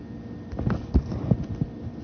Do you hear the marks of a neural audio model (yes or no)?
no